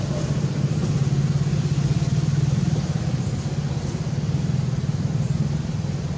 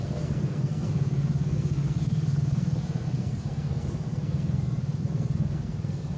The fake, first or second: second